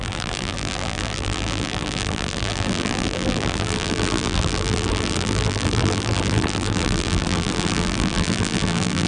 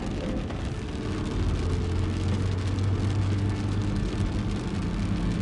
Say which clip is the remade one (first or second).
first